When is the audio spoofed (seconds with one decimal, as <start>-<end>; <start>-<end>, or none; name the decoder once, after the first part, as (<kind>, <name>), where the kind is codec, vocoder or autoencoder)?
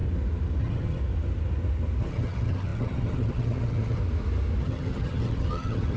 0.6-1.0 (vocoder, HiFi-GAN); 2.0-4.0; 4.6-6.0